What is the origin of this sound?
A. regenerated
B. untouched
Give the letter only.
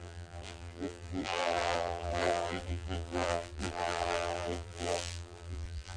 A